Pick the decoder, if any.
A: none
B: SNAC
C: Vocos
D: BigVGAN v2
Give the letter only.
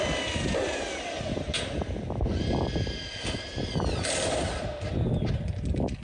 A